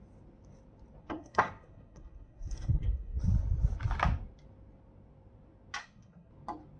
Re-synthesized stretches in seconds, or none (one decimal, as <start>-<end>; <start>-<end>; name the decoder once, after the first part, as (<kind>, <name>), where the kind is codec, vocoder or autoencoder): 1.0-3.2 (codec, SNAC); 5.8-6.3